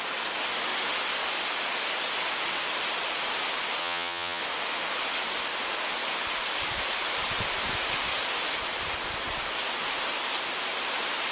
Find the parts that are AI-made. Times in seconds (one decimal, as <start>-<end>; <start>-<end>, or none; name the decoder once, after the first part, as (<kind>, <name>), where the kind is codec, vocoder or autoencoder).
3.8-4.4 (vocoder, HiFi-GAN)